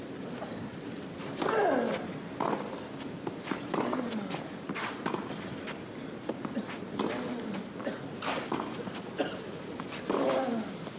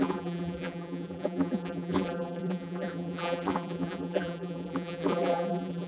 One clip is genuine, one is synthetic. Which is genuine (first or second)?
first